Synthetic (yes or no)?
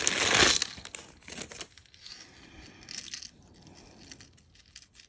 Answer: no